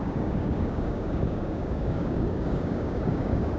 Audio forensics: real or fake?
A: fake